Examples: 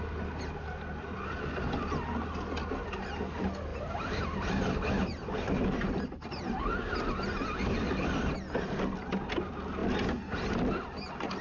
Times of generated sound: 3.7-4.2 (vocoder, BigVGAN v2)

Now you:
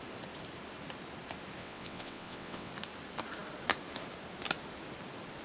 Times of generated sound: 1.6-2.7 (vocoder, WaveNeXt)

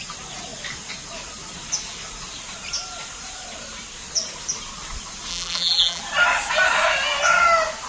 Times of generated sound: 5.3-6.0 (vocoder, BigVGAN v2)